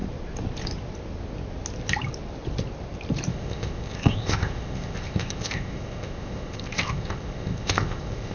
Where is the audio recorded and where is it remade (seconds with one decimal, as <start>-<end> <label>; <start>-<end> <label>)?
0.0-3.3 recorded; 3.3-8.3 remade